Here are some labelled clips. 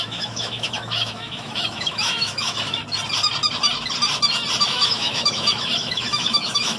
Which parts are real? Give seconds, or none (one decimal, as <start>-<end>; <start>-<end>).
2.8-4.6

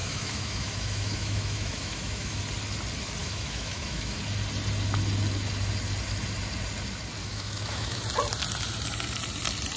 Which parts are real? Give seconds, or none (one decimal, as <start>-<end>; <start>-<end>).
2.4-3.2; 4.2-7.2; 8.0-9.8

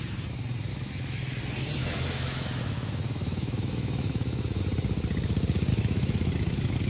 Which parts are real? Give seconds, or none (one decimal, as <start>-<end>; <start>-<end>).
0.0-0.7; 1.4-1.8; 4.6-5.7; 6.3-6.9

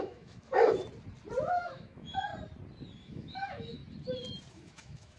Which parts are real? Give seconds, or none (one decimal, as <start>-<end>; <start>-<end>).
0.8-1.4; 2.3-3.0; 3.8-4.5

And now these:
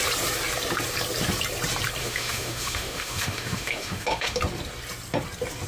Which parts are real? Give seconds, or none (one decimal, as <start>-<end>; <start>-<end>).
0.0-2.0; 4.4-5.7